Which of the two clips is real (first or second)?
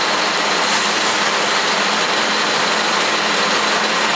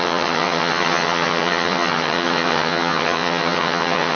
first